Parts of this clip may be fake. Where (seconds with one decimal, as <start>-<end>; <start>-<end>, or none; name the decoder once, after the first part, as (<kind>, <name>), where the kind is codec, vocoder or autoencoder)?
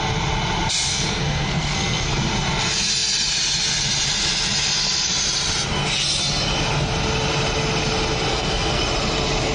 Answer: 0.9-2.3 (codec, SNAC); 8.3-8.8